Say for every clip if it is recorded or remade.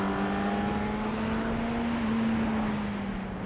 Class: recorded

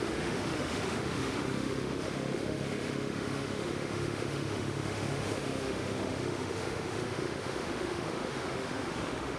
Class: remade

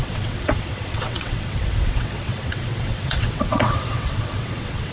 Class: remade